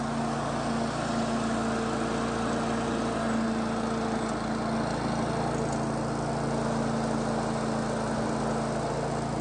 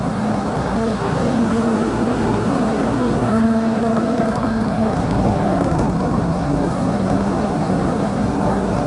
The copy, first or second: second